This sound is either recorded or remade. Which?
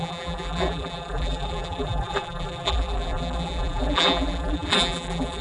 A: remade